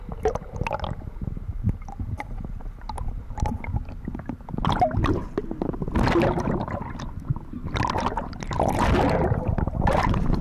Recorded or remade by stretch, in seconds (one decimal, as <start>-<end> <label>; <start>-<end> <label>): 0.0-10.4 recorded